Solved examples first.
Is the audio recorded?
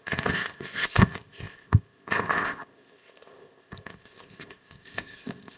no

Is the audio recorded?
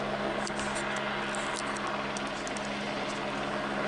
yes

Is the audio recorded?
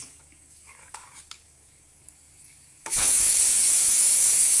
no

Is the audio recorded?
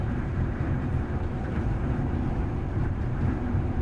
no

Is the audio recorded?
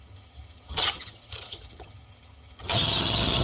no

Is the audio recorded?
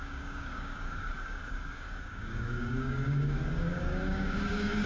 no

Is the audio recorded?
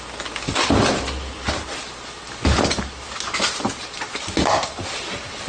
yes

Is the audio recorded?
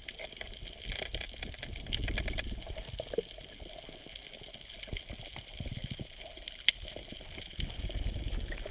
yes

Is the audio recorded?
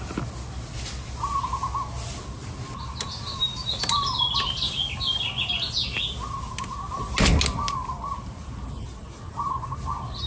yes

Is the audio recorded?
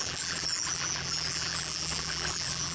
no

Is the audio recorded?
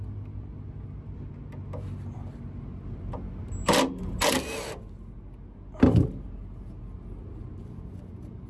yes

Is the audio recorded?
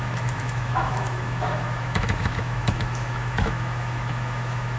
no